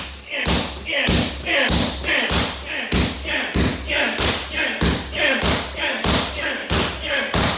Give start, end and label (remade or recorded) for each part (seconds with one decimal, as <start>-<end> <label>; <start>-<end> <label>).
0.0-6.6 recorded; 6.6-7.6 remade